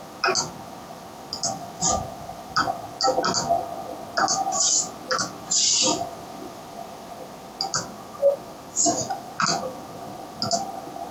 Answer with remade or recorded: recorded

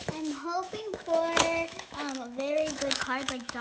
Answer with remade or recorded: remade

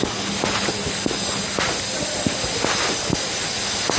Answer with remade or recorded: recorded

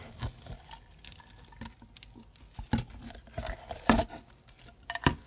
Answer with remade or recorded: recorded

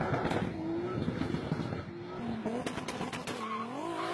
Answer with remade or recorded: recorded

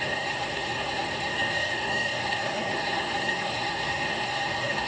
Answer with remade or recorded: remade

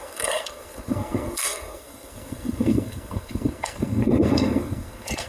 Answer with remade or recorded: remade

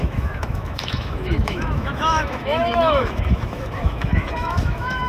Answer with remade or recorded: remade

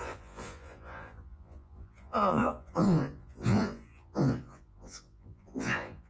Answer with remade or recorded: remade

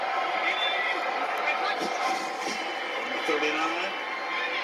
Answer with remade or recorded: recorded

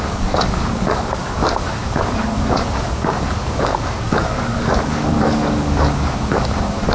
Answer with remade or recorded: remade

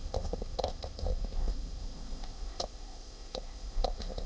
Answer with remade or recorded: remade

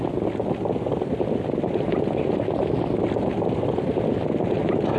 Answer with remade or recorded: recorded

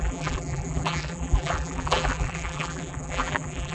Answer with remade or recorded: remade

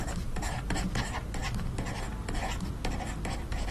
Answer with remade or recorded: remade